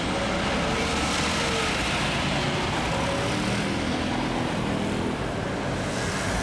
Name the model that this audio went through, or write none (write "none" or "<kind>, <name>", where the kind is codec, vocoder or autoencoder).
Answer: none